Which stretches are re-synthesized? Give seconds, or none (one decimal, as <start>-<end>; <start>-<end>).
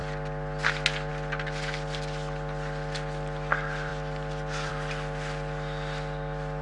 none